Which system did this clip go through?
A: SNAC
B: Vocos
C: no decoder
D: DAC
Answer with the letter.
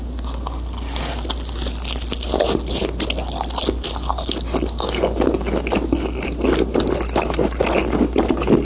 C